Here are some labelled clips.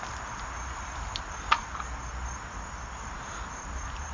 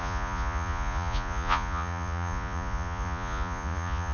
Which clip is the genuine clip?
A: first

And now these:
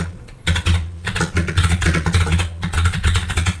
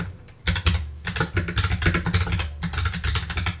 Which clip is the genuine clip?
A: second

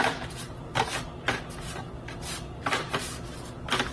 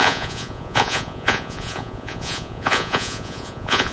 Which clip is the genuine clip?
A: first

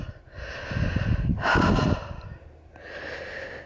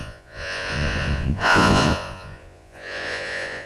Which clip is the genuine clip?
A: first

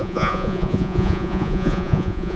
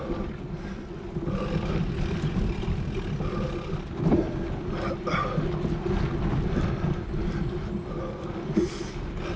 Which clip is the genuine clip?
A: second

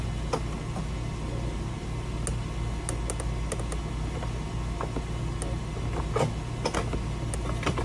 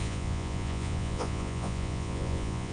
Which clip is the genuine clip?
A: first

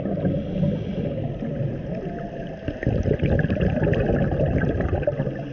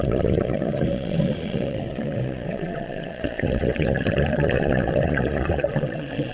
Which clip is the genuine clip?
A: first